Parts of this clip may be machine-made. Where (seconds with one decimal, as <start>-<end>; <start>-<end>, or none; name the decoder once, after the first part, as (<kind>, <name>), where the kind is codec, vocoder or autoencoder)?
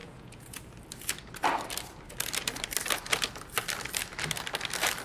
0.0-0.6 (vocoder, Vocos)